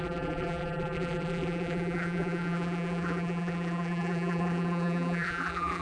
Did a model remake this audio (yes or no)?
yes